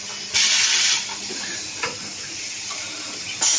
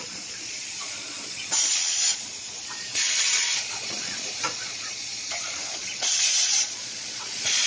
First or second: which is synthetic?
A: second